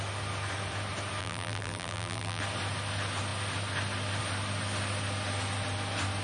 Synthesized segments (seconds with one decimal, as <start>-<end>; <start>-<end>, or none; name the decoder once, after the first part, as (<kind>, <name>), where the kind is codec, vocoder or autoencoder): 1.2-2.4 (vocoder, BigVGAN v2)